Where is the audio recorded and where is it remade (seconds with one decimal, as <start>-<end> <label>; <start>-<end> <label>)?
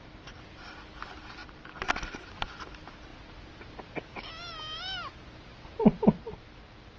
0.0-7.0 recorded